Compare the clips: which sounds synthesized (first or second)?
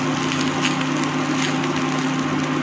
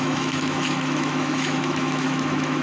second